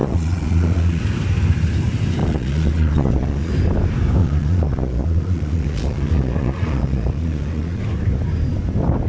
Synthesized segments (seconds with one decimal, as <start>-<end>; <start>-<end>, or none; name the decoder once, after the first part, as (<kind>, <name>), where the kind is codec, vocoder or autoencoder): 0.0-1.0 (vocoder, Vocos); 2.2-3.5; 4.2-7.8